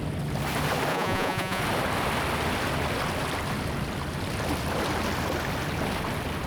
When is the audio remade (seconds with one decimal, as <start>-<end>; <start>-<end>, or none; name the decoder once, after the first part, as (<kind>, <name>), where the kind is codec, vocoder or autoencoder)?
0.9-1.6 (vocoder, Vocos)